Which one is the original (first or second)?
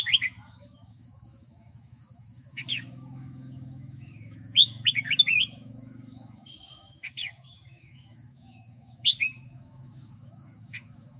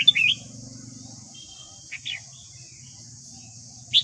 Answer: second